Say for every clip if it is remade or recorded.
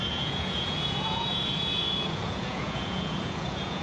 remade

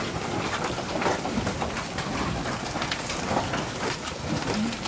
recorded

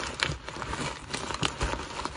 recorded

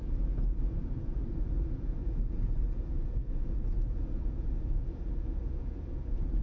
remade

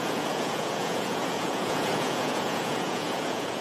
remade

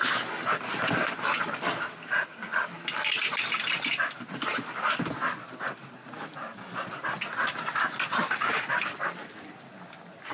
recorded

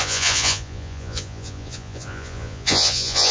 remade